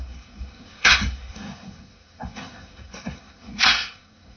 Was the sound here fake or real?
fake